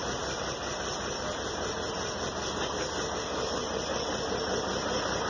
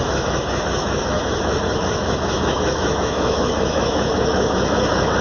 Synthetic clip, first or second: second